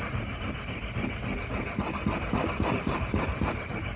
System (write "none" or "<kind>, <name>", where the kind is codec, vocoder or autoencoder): vocoder, BigVGAN v2